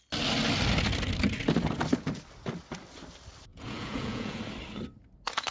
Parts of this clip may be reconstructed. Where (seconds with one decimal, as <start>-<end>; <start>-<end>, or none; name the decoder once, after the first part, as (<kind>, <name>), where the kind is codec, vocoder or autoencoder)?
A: 3.5-4.4 (vocoder, Vocos)